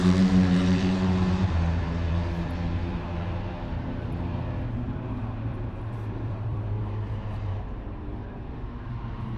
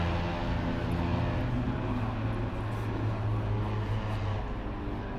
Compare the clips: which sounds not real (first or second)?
first